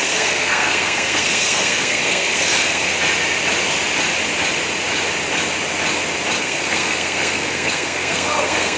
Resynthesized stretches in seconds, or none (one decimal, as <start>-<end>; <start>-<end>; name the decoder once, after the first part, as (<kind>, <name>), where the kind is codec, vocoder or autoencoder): 0.0-2.9 (codec, SNAC); 6.4-8.8